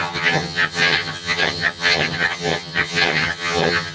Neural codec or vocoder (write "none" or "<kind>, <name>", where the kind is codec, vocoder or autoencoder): vocoder, HiFi-GAN